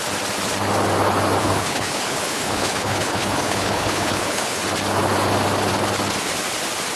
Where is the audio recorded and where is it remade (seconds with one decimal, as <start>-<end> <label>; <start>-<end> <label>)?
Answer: 0.0-1.4 recorded; 1.4-4.6 remade; 4.6-7.0 recorded